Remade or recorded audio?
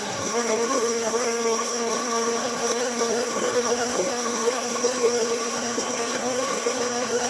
remade